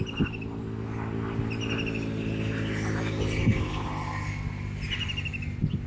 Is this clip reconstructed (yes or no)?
no